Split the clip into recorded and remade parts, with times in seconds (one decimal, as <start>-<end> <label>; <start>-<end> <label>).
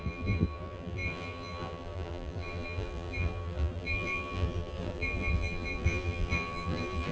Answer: 0.0-7.1 remade